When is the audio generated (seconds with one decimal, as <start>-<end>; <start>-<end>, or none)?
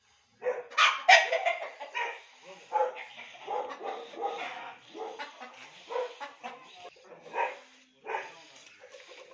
1.2-2.1